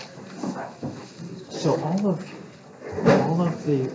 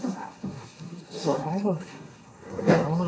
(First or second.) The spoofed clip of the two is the second